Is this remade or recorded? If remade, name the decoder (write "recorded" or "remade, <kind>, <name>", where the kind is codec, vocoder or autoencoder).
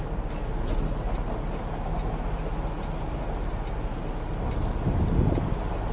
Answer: recorded